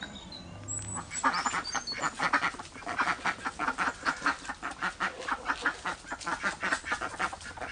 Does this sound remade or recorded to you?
recorded